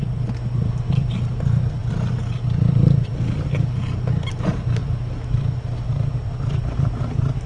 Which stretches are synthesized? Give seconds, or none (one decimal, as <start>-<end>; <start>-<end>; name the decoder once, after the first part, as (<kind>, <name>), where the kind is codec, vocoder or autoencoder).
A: none

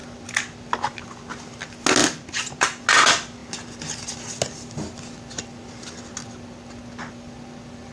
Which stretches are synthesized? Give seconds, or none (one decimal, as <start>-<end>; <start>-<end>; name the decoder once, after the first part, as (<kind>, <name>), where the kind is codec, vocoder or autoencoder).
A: 2.0-2.8 (vocoder, BigVGAN v2)

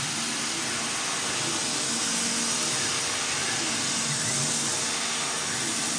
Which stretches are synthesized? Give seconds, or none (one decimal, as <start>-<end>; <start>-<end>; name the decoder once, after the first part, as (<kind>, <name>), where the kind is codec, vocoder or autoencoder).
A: none

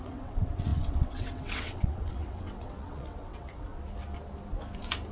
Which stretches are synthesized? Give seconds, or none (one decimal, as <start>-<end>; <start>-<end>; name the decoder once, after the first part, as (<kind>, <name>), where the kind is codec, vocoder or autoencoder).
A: 0.0-3.7 (vocoder, WaveNeXt)